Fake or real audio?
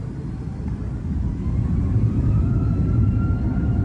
fake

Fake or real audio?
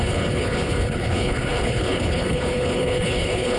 fake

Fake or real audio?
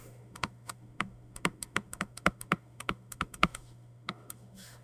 fake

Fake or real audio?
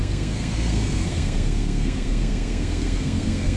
fake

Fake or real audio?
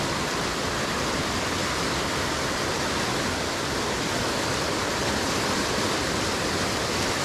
real